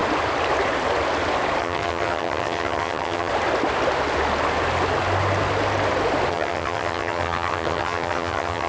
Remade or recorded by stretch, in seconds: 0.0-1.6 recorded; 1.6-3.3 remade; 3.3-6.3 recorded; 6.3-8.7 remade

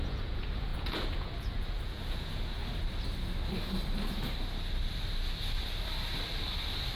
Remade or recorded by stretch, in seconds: 0.0-2.6 remade; 2.6-7.0 recorded

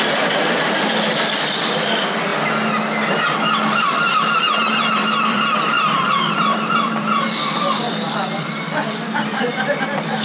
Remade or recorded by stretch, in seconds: 0.0-2.3 remade; 2.3-3.2 recorded; 3.2-10.2 remade